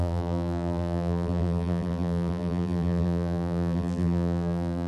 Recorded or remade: remade